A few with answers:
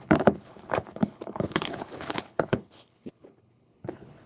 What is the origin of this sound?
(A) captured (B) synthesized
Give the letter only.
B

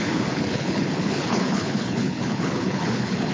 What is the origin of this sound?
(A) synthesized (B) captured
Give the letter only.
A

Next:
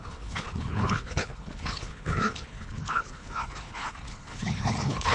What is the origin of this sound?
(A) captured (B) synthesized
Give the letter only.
B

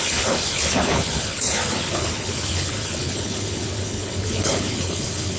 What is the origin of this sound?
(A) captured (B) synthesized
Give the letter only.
B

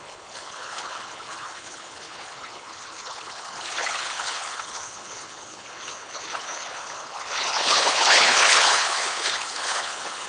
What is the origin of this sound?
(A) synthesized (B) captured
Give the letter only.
A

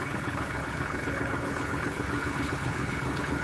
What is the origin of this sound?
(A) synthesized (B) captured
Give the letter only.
A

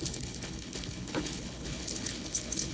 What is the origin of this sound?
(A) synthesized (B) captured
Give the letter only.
A